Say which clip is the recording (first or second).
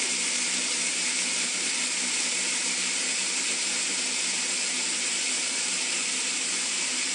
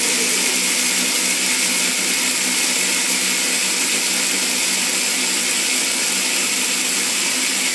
second